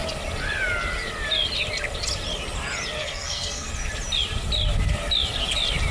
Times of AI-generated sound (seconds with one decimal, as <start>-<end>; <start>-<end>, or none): 3.0-3.7

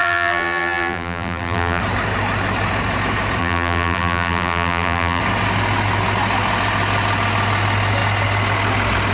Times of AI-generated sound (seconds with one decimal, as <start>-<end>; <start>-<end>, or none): 0.0-1.8; 3.4-5.2

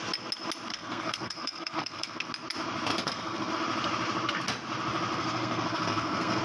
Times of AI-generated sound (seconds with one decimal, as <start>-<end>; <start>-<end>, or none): 0.7-2.3; 2.9-3.5; 5.1-6.4

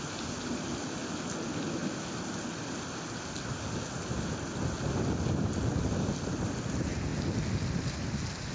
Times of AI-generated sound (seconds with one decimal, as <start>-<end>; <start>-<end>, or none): none